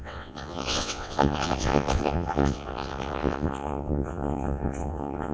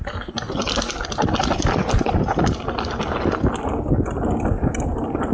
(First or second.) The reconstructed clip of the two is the first